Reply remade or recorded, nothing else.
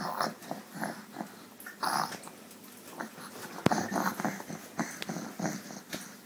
recorded